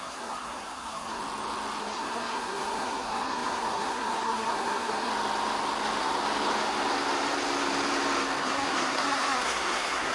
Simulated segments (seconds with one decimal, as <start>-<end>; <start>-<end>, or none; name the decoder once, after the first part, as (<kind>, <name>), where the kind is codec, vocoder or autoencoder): 0.0-1.2 (codec, SNAC); 1.8-5.1; 8.4-10.1